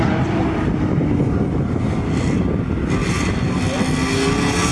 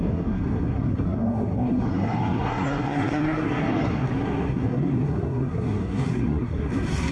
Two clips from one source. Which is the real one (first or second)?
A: first